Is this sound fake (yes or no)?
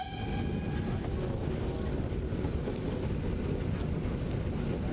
no